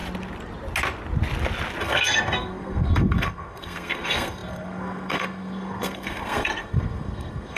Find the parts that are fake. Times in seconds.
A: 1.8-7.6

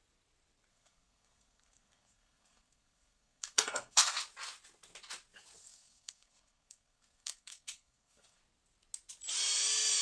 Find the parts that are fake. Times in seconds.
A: 0.7-4.2; 5.6-8.4